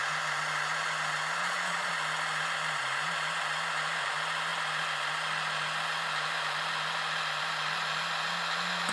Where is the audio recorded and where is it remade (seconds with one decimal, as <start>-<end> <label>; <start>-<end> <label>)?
0.0-1.4 recorded; 1.4-1.9 remade; 1.9-8.9 recorded